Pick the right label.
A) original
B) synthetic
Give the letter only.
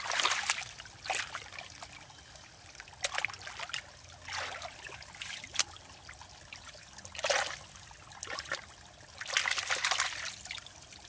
A